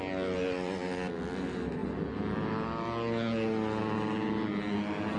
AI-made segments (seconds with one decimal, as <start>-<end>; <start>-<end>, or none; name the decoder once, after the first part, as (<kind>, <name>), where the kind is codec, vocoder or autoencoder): none